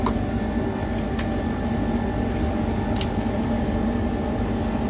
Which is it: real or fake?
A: real